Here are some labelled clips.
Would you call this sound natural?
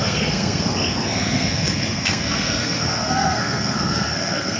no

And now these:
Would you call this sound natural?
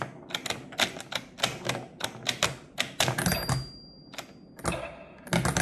yes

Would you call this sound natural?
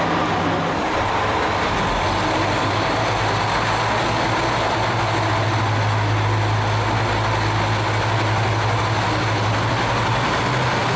yes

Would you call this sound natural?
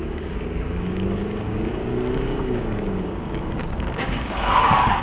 no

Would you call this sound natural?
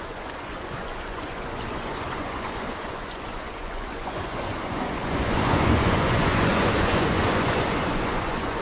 no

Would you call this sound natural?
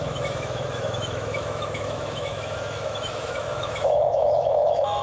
no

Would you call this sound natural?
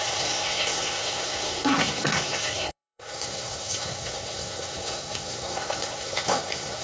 no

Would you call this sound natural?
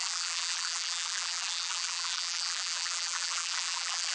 no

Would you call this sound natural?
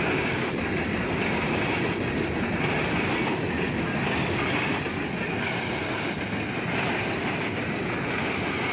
yes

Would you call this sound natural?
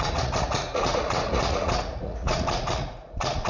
no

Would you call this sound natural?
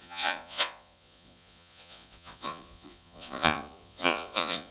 no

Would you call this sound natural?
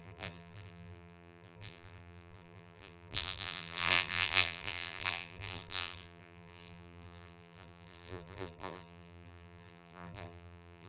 no